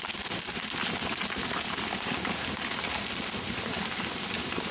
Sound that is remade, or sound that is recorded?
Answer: recorded